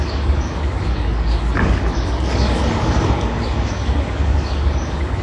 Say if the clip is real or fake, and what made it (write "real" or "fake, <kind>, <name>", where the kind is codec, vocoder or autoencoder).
fake, codec, DAC